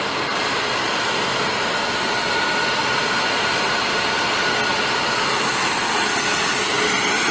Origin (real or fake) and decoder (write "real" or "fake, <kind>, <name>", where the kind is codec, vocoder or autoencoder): real